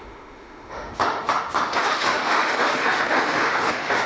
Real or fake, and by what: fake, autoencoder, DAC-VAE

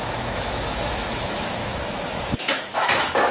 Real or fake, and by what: fake, autoencoder, DAC-VAE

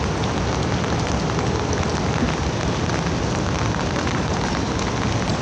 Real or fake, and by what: real